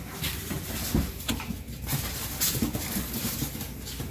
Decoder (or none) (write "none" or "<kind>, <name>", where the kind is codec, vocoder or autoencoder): none